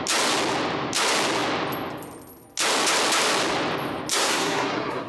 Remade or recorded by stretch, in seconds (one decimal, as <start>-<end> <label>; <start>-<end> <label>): 0.0-4.1 recorded; 4.1-5.1 remade